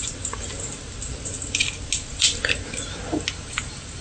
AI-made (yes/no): no